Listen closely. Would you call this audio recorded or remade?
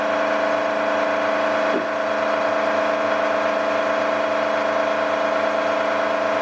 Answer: recorded